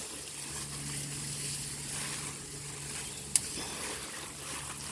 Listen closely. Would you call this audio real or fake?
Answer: real